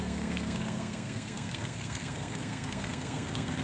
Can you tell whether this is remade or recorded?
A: remade